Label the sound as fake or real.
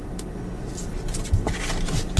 real